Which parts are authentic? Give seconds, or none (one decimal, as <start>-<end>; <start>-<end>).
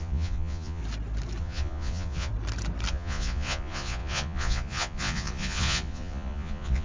0.8-1.4; 2.3-2.9